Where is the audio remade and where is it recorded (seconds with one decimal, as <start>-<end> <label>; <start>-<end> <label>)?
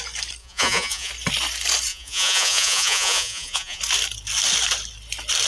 0.0-0.4 recorded; 0.4-1.1 remade; 1.1-1.9 recorded; 1.9-3.8 remade; 3.8-5.5 recorded